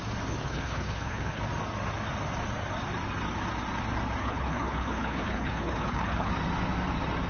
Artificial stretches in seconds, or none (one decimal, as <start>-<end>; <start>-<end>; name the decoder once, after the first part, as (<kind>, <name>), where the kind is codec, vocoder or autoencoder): 0.4-1.4 (codec, HILCodec); 4.2-6.3